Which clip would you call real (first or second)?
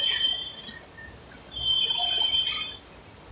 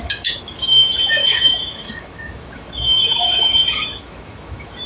first